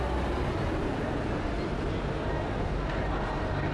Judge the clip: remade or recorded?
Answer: recorded